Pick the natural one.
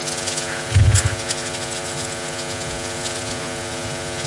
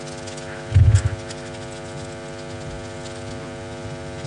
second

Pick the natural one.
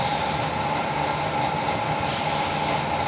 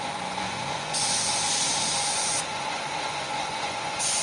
first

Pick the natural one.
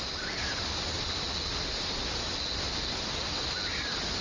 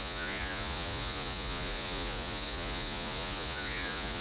first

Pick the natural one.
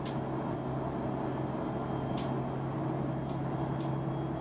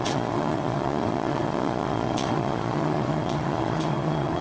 first